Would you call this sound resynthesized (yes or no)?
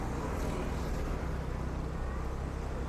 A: no